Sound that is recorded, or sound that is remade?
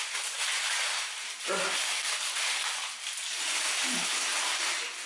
recorded